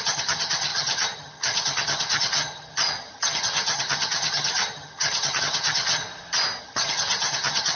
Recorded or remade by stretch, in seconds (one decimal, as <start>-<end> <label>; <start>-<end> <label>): 0.0-6.0 remade; 6.0-6.6 recorded; 6.6-7.8 remade